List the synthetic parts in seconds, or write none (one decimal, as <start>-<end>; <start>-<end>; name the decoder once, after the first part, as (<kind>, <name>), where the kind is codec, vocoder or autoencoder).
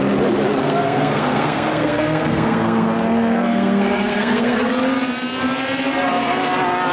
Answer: 0.6-4.7 (codec, SNAC)